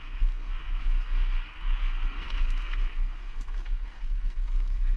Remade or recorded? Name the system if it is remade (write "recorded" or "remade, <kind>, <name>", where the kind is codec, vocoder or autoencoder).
remade, codec, SNAC